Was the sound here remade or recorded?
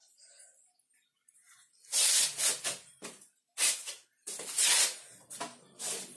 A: recorded